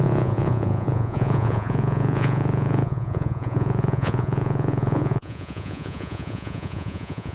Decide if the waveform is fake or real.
fake